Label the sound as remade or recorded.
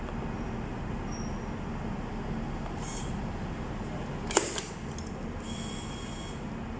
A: recorded